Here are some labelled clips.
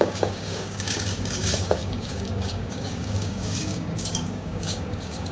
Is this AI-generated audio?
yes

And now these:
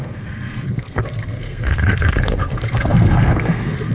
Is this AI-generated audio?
yes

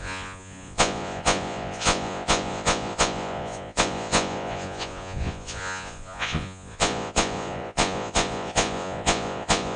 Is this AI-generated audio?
yes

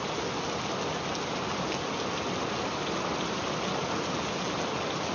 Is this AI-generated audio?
no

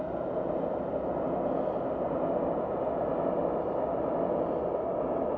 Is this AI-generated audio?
no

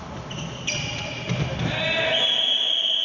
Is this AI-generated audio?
no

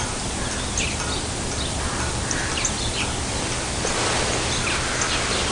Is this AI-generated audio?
no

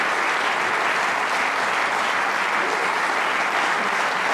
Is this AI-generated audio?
no